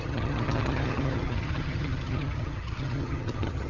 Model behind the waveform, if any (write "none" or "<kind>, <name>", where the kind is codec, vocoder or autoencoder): vocoder, HiFi-GAN